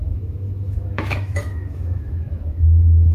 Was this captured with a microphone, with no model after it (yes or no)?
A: no